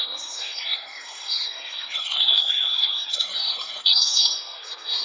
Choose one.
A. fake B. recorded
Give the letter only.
A